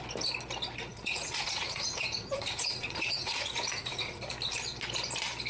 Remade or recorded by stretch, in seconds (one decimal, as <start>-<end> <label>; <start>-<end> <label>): 0.0-0.9 recorded; 0.9-4.2 remade; 4.2-5.5 recorded